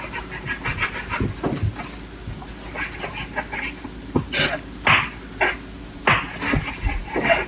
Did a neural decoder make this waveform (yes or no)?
no